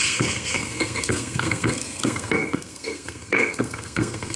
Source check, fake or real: fake